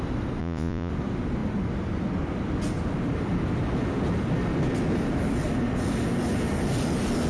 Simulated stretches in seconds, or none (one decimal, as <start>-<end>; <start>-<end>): 0.4-0.9